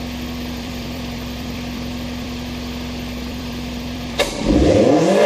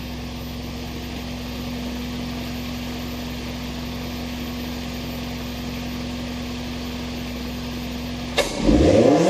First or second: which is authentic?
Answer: second